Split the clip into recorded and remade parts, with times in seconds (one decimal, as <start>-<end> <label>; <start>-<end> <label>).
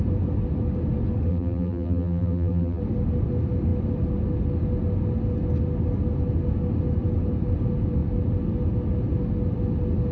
0.0-1.3 recorded; 1.3-2.8 remade; 2.8-10.1 recorded